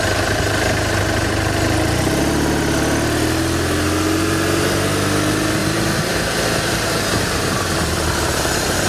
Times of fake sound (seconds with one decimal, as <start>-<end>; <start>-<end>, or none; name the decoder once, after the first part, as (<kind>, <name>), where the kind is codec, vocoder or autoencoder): 5.6-8.9 (vocoder, BigVGAN v2)